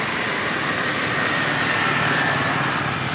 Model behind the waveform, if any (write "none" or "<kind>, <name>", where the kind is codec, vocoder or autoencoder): none